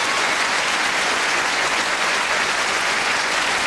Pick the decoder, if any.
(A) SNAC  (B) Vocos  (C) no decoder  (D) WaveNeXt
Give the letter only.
B